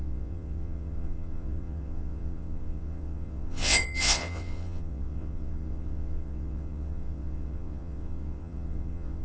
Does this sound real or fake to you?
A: fake